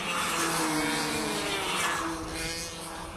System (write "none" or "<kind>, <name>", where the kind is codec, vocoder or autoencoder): none